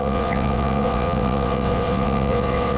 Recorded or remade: remade